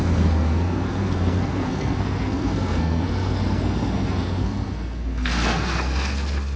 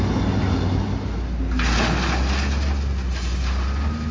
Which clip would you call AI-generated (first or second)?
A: first